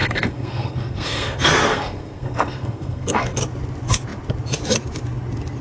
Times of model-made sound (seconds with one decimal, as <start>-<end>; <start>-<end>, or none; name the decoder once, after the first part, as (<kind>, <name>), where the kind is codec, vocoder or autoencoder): 0.0-3.4 (codec, SNAC)